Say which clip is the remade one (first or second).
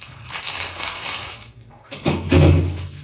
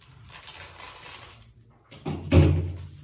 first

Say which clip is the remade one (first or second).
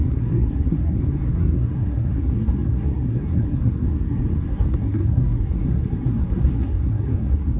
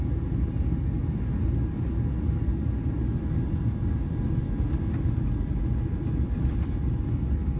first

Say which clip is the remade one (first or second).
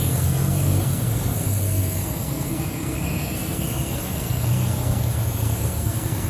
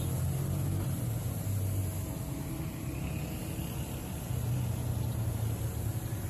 first